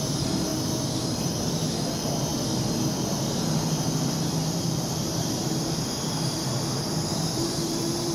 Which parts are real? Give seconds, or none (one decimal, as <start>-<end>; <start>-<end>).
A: 0.5-1.0; 2.3-4.9; 6.5-7.1

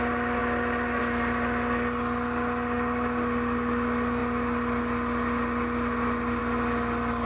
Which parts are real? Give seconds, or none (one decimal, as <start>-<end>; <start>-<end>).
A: 0.0-7.2

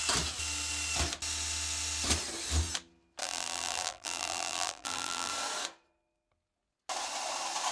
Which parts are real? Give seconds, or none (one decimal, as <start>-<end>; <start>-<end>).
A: 0.0-3.2; 5.3-7.7

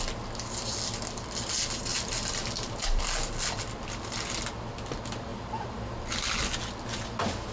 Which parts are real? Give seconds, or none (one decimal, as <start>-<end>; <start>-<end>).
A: 0.0-1.9; 3.0-5.3; 6.0-7.5

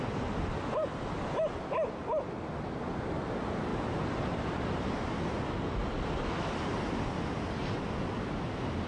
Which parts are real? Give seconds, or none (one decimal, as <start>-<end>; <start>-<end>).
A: 0.0-3.7; 5.0-8.9